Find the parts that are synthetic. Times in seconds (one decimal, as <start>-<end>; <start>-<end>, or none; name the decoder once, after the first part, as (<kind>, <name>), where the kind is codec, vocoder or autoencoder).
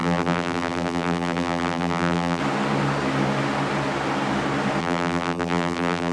0.0-2.4 (vocoder, BigVGAN v2); 4.8-6.1